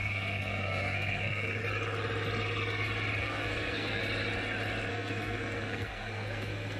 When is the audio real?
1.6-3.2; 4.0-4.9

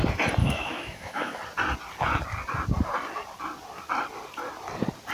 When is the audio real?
0.0-0.4; 1.4-5.1

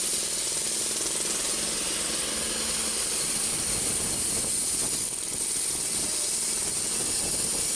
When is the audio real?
0.0-7.8